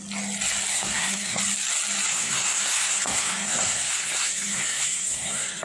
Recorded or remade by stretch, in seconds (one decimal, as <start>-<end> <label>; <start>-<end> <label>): 0.0-0.7 recorded; 0.7-1.4 remade; 1.4-2.1 recorded; 2.1-5.6 remade